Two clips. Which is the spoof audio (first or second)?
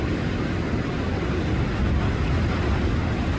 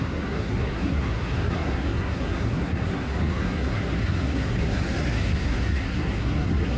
second